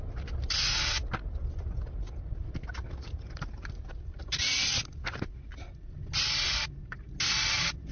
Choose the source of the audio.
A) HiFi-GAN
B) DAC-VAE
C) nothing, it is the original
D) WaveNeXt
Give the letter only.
C